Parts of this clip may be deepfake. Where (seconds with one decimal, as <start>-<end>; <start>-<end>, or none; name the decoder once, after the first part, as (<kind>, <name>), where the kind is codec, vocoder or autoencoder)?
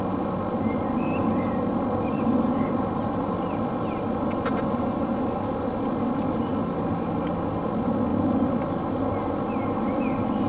none